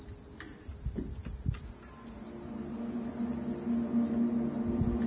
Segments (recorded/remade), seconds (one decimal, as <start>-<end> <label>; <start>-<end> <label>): 0.0-5.1 recorded